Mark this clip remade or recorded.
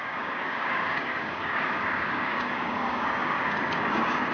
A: remade